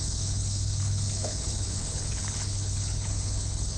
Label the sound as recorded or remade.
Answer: remade